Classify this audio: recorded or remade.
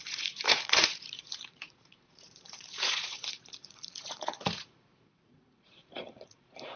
remade